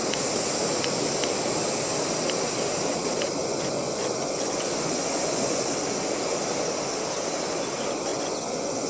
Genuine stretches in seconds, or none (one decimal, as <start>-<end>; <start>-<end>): 0.0-3.4; 5.6-8.1